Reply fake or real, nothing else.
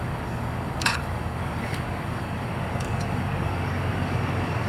fake